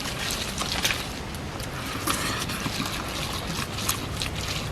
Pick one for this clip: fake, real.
real